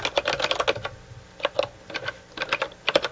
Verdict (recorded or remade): recorded